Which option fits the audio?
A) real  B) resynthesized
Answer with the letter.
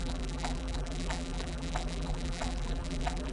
B